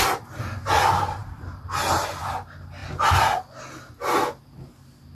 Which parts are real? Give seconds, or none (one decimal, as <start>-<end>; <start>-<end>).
0.0-5.1